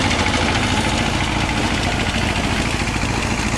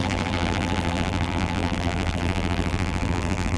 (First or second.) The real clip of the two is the first